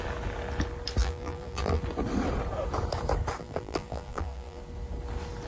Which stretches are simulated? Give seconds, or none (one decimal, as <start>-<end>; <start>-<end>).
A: 1.0-1.8; 3.4-4.6